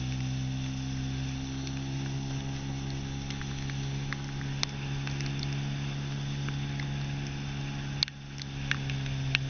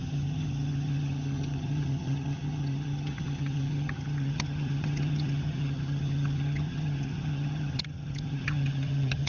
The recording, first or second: first